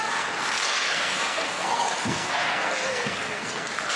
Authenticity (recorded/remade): remade